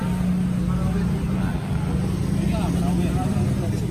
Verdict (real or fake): real